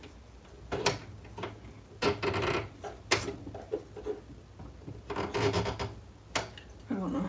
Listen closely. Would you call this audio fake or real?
real